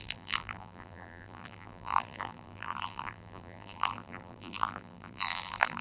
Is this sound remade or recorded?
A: remade